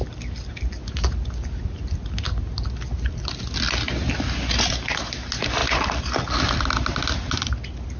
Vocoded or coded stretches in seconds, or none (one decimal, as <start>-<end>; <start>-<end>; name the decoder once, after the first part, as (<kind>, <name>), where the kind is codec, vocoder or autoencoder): none